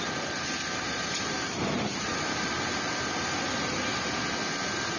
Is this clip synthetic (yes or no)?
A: yes